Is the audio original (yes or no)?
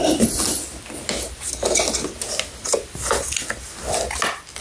yes